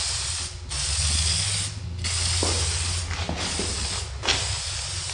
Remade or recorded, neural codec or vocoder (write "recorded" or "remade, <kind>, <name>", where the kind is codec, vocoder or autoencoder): recorded